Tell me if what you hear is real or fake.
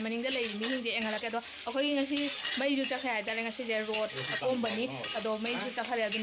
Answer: real